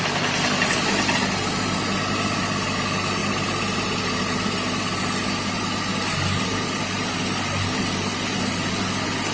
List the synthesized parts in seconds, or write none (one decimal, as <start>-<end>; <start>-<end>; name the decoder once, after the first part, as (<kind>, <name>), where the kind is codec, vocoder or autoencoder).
none